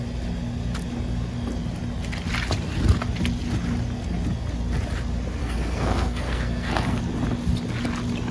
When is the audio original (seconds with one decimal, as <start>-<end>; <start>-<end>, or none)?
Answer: 0.0-5.4; 7.0-8.3